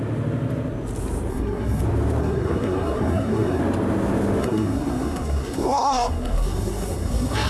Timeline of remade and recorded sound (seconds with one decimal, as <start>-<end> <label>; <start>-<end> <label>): 0.0-1.3 recorded; 1.3-1.8 remade; 1.8-2.2 recorded; 2.2-3.6 remade; 3.6-4.4 recorded; 4.4-7.5 remade